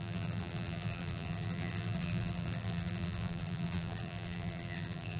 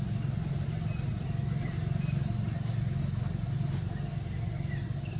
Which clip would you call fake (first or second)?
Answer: first